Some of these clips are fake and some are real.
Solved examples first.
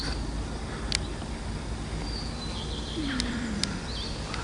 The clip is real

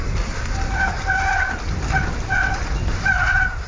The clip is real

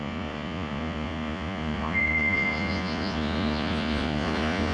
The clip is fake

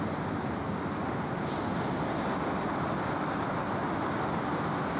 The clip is real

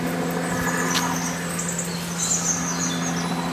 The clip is real